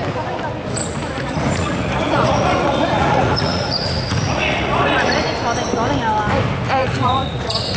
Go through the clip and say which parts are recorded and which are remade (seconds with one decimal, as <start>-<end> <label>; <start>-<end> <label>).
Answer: 0.0-0.8 recorded; 0.8-5.2 remade; 5.2-6.8 recorded; 6.8-7.8 remade